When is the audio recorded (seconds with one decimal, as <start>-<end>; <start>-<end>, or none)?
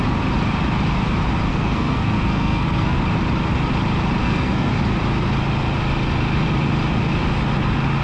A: 0.0-1.5; 3.0-4.2; 4.7-8.0